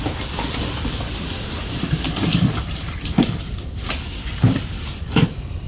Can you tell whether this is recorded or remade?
recorded